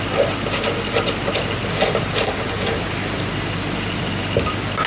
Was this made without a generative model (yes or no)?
yes